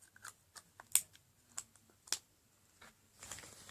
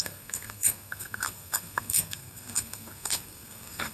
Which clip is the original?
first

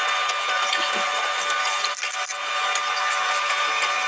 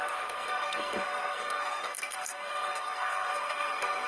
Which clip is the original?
first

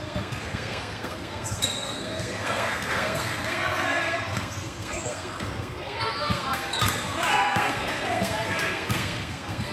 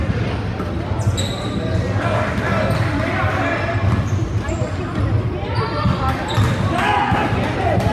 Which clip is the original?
second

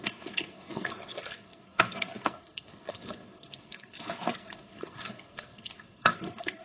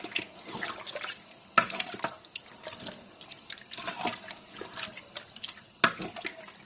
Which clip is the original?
second